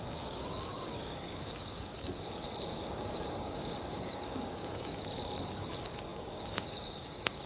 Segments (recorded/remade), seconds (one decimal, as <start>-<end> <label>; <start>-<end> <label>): 0.0-4.9 remade; 4.9-5.4 recorded; 5.4-7.5 remade